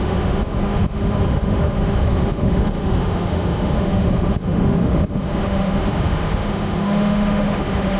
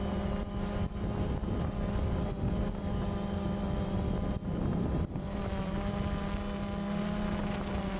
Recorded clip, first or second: second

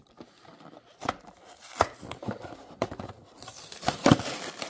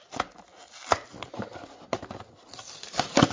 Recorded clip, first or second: second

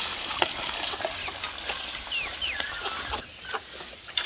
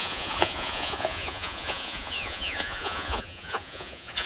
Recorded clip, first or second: first